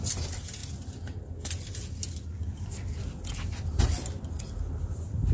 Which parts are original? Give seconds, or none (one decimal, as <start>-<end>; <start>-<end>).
0.0-5.3